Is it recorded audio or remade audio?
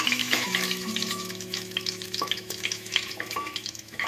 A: remade